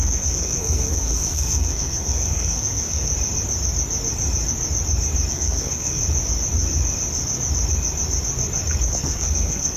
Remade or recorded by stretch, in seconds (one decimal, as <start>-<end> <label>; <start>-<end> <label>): 0.0-3.1 remade; 3.1-5.3 recorded; 5.3-6.0 remade; 6.0-8.9 recorded; 8.9-9.8 remade

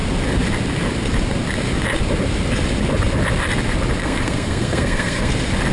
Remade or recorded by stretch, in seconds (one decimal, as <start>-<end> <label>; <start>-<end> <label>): 0.0-4.0 recorded; 4.0-5.3 remade; 5.3-5.7 recorded

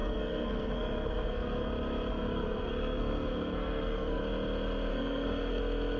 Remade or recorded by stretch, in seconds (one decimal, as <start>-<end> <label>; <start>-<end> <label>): 0.0-1.7 remade; 1.7-2.1 recorded; 2.1-4.2 remade; 4.2-4.9 recorded; 4.9-5.6 remade; 5.6-6.0 recorded

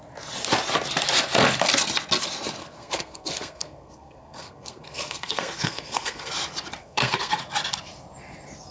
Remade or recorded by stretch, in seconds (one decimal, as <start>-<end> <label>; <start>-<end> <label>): 0.0-2.6 recorded; 2.6-6.3 remade; 6.3-6.8 recorded; 6.8-7.4 remade; 7.4-8.7 recorded

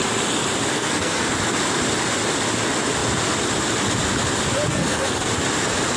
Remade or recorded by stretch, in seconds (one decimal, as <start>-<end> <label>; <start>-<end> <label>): 0.0-0.7 recorded; 0.7-1.3 remade; 1.3-4.7 recorded; 4.7-5.3 remade; 5.3-6.0 recorded

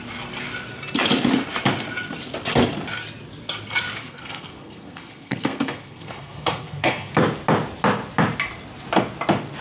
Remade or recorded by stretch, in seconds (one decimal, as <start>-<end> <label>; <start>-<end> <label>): 0.0-4.0 recorded; 4.0-7.1 remade; 7.1-9.6 recorded

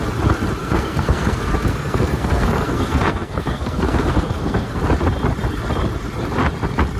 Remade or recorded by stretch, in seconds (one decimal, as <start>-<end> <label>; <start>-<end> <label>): 0.0-0.6 recorded; 0.6-4.8 remade; 4.8-7.0 recorded

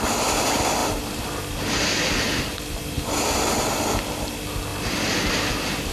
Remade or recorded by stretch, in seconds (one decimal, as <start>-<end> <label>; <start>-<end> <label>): 0.0-5.9 recorded